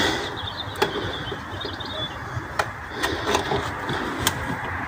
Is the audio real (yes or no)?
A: yes